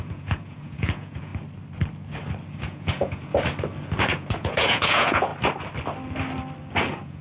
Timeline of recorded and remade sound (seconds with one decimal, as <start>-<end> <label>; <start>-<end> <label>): 0.0-1.3 remade; 1.3-2.6 recorded; 2.6-3.3 remade; 3.3-4.0 recorded; 4.0-5.3 remade; 5.3-6.8 recorded; 6.8-7.2 remade